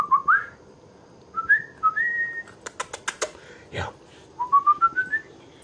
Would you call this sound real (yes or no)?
yes